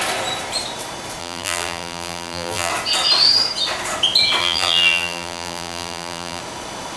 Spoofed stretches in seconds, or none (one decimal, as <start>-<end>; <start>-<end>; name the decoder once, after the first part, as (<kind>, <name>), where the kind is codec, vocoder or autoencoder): 1.2-2.7 (vocoder, BigVGAN v2); 4.4-6.4